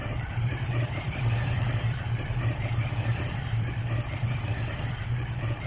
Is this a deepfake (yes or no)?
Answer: yes